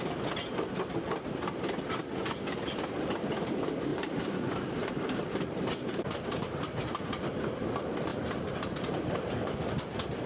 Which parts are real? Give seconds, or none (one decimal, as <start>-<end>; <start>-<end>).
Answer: 0.0-3.9; 7.0-8.1